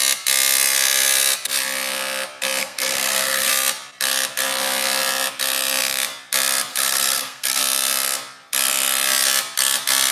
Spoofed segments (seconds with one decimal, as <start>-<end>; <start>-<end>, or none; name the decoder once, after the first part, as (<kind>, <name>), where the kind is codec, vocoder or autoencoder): 2.6-3.5 (codec, SNAC); 6.7-7.6